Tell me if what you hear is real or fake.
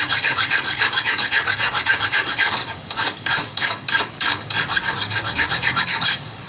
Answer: fake